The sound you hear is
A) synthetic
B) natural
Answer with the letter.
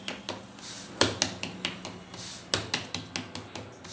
B